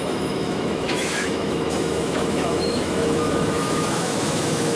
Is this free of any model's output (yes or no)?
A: no